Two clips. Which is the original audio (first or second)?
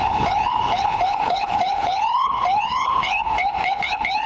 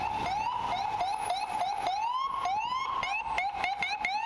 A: second